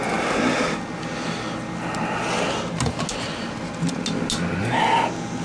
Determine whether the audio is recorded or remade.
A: recorded